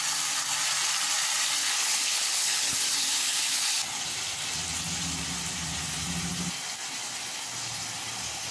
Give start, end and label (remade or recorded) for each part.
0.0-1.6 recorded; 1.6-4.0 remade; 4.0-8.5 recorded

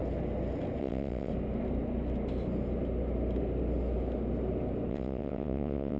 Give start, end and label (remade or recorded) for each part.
0.0-0.8 recorded; 0.8-1.3 remade; 1.3-4.9 recorded; 4.9-6.0 remade

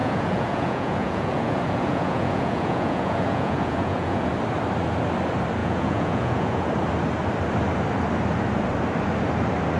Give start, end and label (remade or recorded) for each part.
0.0-4.3 remade; 4.3-5.6 recorded; 5.6-6.7 remade; 6.7-9.8 recorded

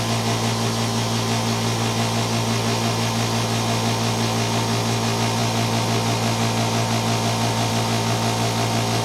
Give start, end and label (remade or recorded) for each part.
0.0-9.0 recorded

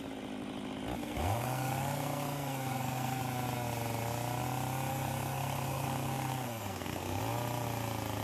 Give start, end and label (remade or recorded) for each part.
0.0-1.0 recorded; 1.0-3.2 remade; 3.2-4.9 recorded; 4.9-7.2 remade; 7.2-8.2 recorded